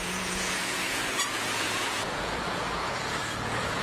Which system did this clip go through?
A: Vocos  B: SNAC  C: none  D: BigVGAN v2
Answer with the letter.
A